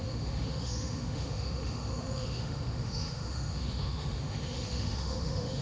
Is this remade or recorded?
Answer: remade